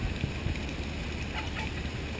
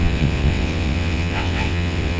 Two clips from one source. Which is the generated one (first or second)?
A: second